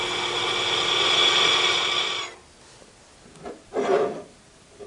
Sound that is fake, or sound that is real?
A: real